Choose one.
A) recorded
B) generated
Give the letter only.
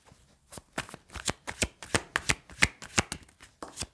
A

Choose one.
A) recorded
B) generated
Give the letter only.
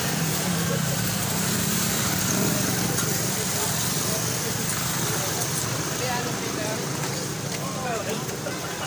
B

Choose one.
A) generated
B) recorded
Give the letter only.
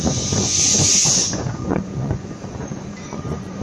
A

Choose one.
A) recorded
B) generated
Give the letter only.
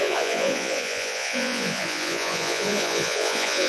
B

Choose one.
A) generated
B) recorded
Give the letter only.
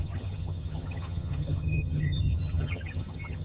A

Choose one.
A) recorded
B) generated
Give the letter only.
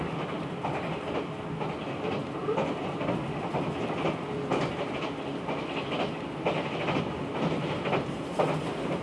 A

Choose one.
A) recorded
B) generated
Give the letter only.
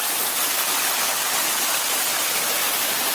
A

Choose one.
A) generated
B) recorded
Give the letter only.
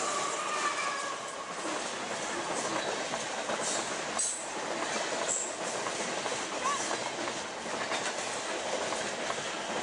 B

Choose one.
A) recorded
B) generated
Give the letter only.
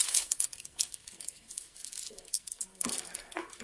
B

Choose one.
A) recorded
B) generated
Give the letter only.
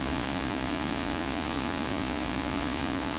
B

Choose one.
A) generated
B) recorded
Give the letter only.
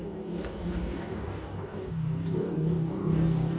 A